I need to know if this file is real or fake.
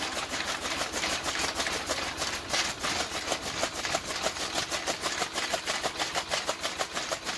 real